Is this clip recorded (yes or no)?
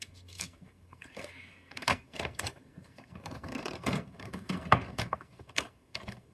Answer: no